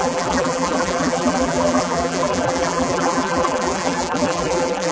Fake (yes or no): yes